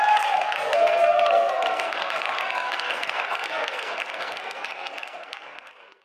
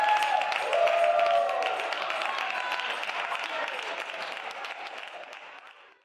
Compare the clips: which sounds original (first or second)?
second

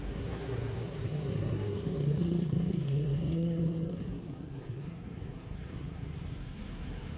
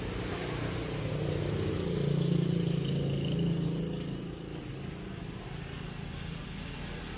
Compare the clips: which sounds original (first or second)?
second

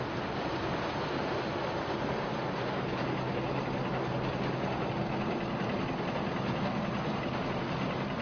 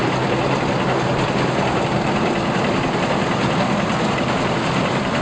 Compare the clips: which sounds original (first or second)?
first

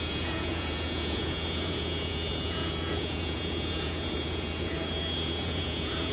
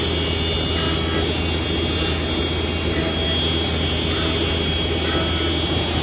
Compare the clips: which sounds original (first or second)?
second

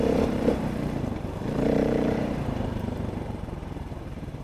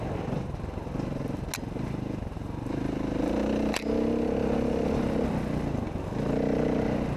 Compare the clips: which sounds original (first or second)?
second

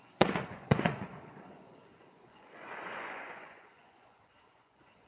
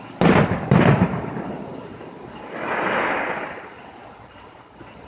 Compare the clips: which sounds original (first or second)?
second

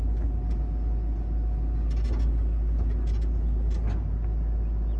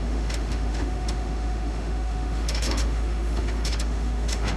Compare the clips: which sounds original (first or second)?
first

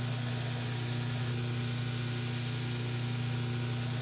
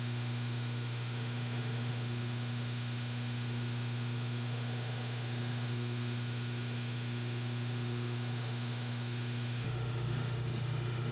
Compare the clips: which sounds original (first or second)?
first